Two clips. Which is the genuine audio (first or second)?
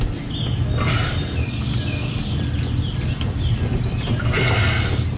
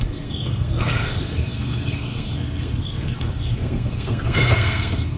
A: first